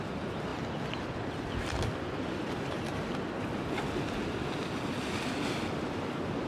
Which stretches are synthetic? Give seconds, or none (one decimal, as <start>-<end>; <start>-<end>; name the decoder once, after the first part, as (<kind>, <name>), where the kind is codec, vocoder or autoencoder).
none